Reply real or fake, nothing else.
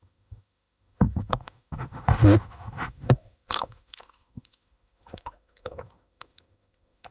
fake